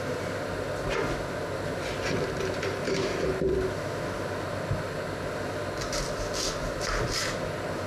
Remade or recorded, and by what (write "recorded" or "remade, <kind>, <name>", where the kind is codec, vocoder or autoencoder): recorded